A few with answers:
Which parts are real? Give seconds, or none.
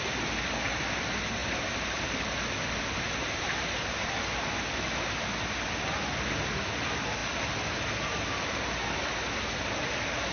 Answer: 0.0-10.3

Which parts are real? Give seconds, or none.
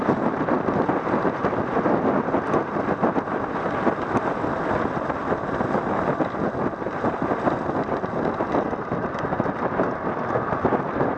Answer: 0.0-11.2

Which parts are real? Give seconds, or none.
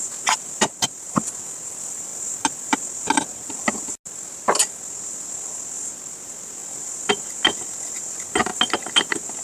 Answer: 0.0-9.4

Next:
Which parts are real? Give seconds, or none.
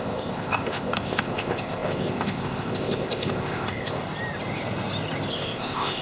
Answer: 4.0-5.3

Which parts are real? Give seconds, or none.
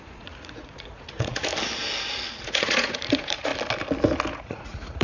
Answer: 1.5-2.4; 3.5-4.3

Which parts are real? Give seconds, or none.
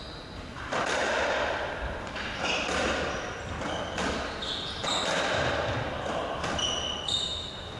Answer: 0.0-7.8